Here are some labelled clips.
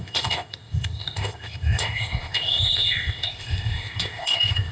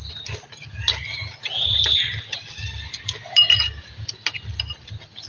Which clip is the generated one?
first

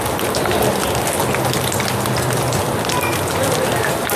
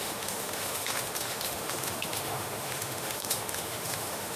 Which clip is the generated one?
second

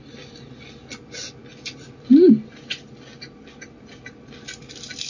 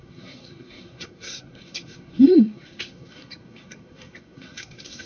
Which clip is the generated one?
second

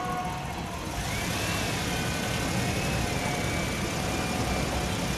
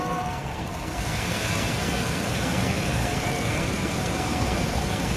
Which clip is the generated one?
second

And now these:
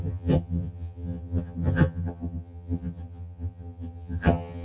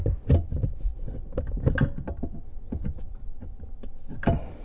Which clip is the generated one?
first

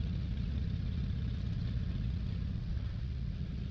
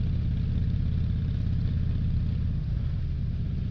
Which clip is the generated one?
first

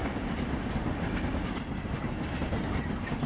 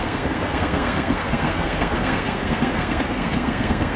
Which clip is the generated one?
second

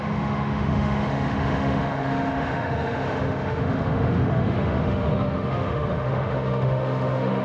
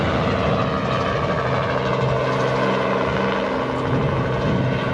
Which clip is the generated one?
first